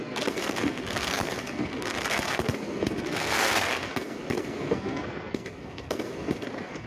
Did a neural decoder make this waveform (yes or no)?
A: yes